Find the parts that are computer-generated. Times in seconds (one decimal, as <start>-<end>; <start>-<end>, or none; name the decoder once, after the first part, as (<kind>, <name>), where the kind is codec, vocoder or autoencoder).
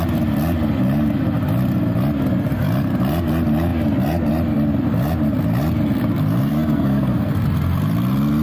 6.5-7.3 (codec, SNAC)